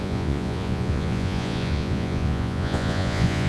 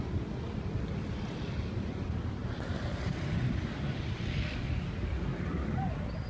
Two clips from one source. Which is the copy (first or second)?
first